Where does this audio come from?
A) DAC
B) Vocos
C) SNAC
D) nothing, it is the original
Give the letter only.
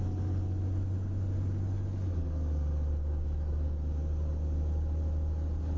D